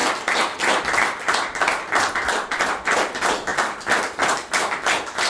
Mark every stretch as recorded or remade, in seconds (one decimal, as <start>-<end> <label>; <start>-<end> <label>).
0.0-5.3 recorded